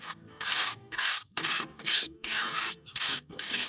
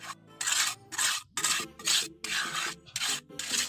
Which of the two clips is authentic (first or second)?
second